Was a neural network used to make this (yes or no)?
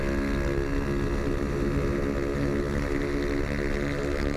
no